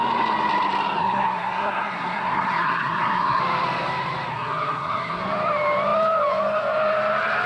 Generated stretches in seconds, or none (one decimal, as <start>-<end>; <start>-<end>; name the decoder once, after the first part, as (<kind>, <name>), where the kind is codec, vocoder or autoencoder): 1.0-3.4 (codec, SNAC); 4.3-5.2